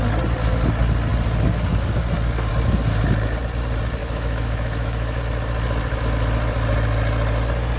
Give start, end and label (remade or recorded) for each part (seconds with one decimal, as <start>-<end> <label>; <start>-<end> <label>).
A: 0.0-4.0 recorded; 4.0-5.2 remade; 5.2-7.8 recorded